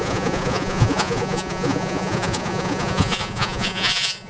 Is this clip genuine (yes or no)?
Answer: no